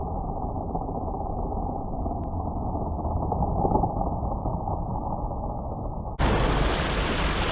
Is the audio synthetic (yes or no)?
no